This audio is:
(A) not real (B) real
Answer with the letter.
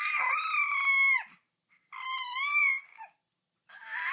B